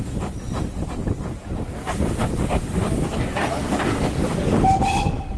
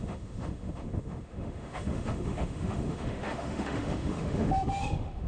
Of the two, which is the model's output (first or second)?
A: second